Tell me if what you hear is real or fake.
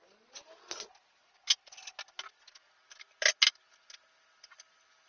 real